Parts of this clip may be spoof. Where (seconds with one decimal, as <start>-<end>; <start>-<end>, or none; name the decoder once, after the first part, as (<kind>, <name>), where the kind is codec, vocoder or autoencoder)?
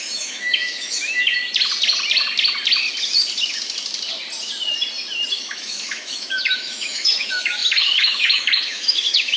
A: 0.0-1.4 (autoencoder, DAC-VAE); 5.3-9.4